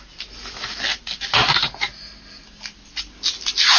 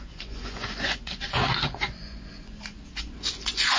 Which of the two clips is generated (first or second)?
second